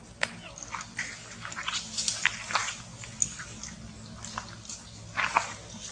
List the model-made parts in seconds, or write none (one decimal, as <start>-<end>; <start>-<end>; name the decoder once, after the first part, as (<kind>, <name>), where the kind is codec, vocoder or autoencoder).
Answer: none